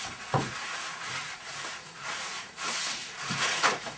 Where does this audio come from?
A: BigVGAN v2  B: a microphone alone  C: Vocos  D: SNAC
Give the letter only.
C